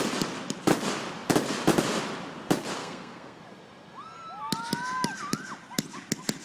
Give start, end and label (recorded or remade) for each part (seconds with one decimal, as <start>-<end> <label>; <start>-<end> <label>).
0.0-2.8 recorded; 2.8-3.4 remade; 3.4-6.4 recorded

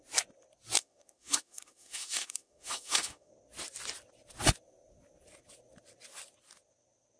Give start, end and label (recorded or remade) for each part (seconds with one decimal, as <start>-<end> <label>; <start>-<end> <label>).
0.0-0.8 recorded; 0.8-3.3 remade; 3.3-7.2 recorded

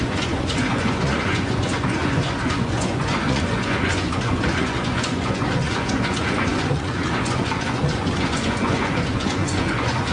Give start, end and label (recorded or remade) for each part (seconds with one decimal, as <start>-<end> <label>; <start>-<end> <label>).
0.0-10.1 remade

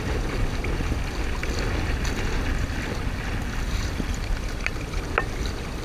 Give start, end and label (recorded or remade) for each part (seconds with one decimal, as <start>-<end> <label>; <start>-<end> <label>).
0.0-1.4 recorded; 1.4-4.9 remade; 4.9-5.8 recorded

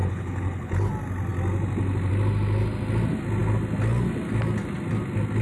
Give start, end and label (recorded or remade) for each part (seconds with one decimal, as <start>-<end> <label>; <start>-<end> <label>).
0.0-0.9 remade; 0.9-5.4 recorded

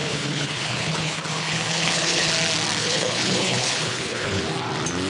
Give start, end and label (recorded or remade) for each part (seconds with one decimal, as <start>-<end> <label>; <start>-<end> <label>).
0.0-2.3 remade; 2.3-2.8 recorded; 2.8-4.4 remade; 4.4-5.1 recorded

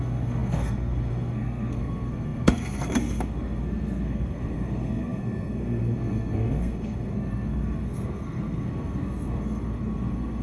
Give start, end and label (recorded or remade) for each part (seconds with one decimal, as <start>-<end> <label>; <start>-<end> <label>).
0.0-10.4 remade